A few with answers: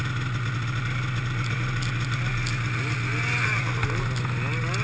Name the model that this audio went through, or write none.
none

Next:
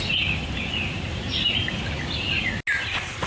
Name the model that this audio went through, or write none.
none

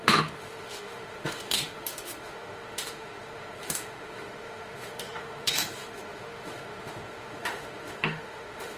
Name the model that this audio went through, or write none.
autoencoder, DAC-VAE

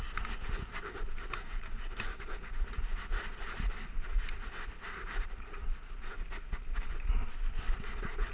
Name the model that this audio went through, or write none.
none